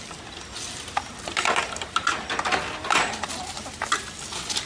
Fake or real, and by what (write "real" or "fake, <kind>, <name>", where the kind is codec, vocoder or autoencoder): real